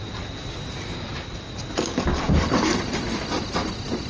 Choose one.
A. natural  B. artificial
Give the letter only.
A